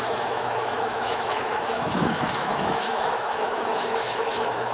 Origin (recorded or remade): remade